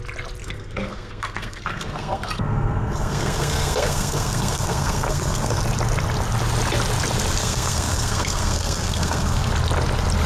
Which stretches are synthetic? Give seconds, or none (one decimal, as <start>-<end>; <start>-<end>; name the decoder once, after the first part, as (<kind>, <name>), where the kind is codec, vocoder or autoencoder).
0.4-5.6 (codec, SNAC); 7.4-9.5